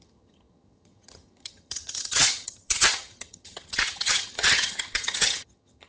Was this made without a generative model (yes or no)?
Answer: no